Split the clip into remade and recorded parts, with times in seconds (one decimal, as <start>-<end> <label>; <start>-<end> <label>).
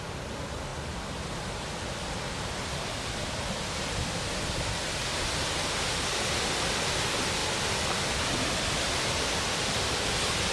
0.0-5.1 recorded; 5.1-5.7 remade; 5.7-10.5 recorded